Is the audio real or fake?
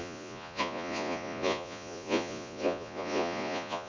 fake